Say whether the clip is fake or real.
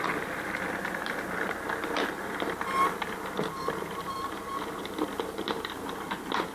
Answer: real